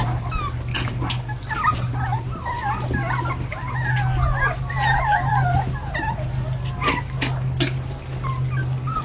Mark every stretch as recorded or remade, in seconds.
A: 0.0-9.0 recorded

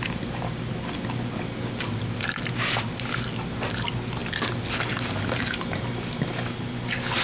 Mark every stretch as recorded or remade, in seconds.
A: 0.0-7.2 recorded